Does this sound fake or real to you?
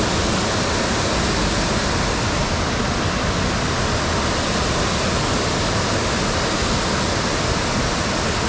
real